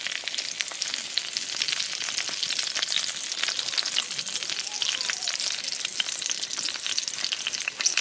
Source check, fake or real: real